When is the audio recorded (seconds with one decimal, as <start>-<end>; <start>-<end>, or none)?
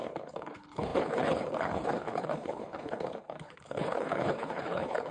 none